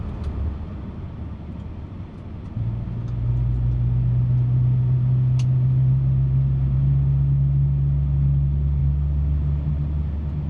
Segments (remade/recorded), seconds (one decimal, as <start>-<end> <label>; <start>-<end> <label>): 0.0-10.5 recorded